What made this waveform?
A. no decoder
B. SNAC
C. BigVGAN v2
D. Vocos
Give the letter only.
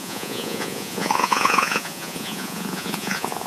D